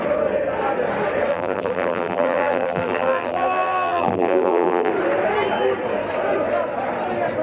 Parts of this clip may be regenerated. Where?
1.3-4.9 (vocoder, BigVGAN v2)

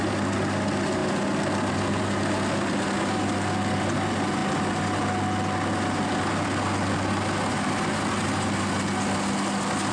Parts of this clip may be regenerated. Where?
none

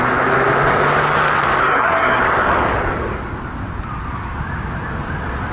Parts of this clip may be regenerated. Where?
1.6-2.2 (codec, SNAC)

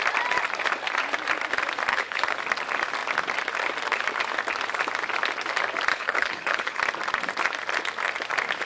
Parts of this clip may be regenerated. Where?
1.9-2.4 (codec, HILCodec); 5.9-6.8

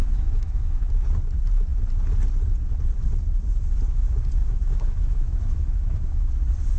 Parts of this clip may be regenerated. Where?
0.0-0.9 (autoencoder, DAC-VAE); 4.4-6.3

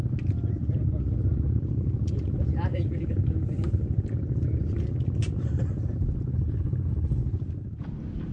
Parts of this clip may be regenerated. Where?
6.3-7.2 (codec, HILCodec)